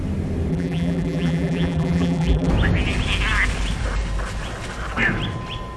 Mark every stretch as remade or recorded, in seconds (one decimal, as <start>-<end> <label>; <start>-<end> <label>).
0.0-0.5 recorded; 0.5-2.5 remade; 2.5-5.8 recorded